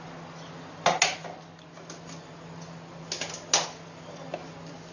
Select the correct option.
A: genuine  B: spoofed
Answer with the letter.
A